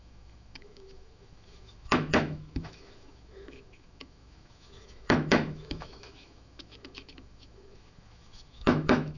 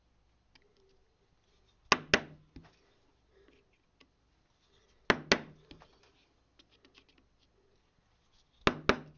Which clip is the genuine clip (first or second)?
second